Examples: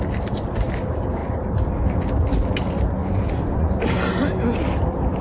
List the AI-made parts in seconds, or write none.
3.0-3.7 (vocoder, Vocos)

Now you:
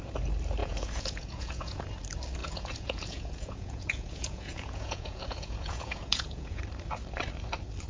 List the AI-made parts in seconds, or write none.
0.6-1.8 (vocoder, Vocos); 2.4-6.6

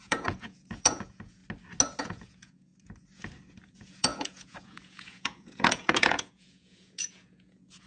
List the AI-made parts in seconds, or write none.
0.0-1.4 (vocoder, Vocos); 2.0-2.7; 3.6-7.9

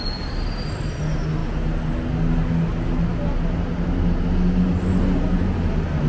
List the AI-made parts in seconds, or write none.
none

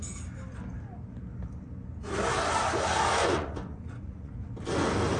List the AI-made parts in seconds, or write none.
3.2-4.3 (vocoder, Vocos)